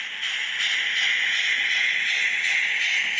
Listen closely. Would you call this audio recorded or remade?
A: recorded